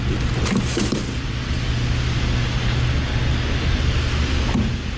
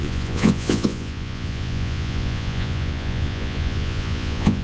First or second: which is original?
first